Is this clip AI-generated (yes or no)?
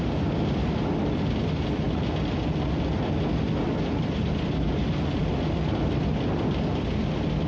no